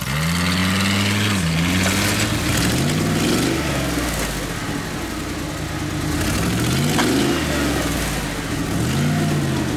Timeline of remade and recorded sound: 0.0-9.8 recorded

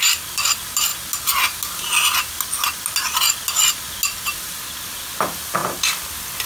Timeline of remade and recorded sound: 0.0-0.9 remade; 0.9-4.8 recorded; 4.8-6.5 remade